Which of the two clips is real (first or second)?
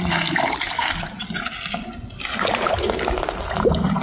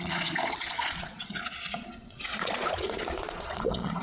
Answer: first